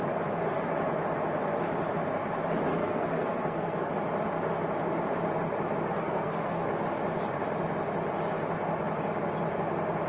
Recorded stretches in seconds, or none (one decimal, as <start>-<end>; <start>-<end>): 0.0-2.8; 3.9-5.9; 6.7-10.1